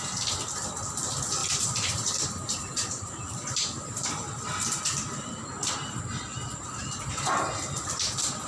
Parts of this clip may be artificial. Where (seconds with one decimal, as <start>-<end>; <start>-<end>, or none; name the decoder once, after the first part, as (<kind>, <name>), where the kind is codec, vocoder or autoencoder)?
1.4-6.0 (vocoder, BigVGAN v2)